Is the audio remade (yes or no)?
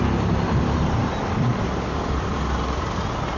no